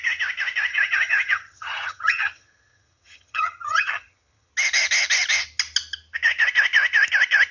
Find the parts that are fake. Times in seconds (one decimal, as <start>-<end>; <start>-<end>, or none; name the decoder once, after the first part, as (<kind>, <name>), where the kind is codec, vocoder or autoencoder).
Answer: 0.7-4.5 (vocoder, HiFi-GAN)